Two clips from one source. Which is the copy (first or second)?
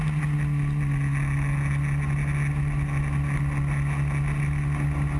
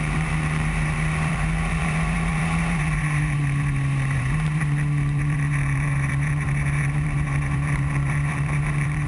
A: second